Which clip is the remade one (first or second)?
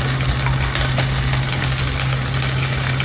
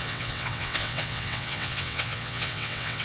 second